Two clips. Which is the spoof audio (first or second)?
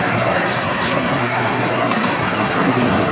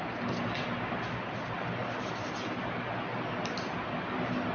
first